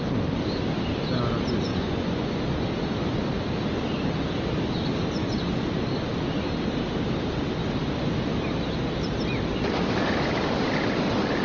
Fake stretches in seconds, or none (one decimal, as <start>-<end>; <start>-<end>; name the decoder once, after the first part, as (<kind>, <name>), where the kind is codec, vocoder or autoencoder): 1.7-2.4 (vocoder, Vocos)